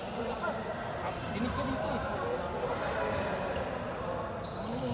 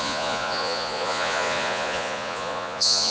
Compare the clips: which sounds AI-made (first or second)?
second